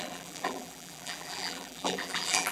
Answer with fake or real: fake